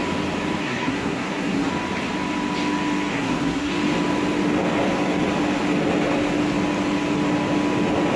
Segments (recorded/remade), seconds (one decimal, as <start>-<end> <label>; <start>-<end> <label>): 0.0-0.6 recorded; 0.6-1.7 remade; 1.7-3.1 recorded; 3.1-3.7 remade; 3.7-8.2 recorded